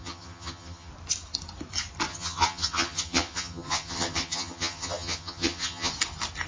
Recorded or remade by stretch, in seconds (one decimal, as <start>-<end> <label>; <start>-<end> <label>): 0.0-0.9 remade; 0.9-2.1 recorded; 2.1-5.9 remade; 5.9-6.5 recorded